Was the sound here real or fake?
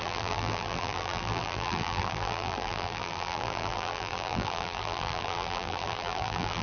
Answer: fake